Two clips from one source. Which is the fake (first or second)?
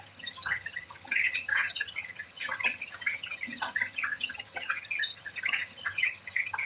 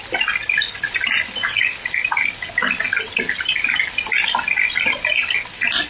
first